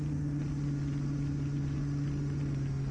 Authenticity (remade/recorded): recorded